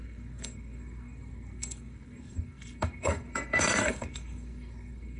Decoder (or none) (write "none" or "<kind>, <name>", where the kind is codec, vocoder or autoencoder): codec, SNAC